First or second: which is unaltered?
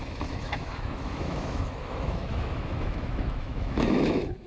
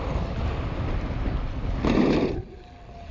second